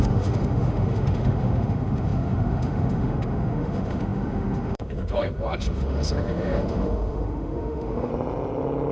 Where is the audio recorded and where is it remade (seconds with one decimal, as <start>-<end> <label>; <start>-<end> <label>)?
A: 0.0-8.1 remade; 8.1-8.9 recorded